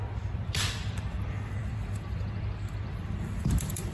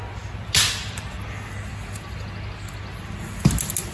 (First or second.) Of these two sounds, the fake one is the first